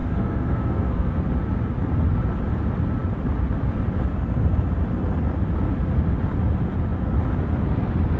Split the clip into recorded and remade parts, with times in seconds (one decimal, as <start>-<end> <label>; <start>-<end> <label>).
0.0-1.1 remade; 1.1-8.2 recorded